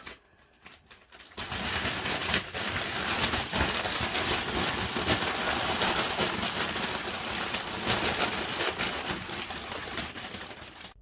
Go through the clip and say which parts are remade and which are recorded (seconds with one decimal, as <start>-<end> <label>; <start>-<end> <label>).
0.0-11.0 recorded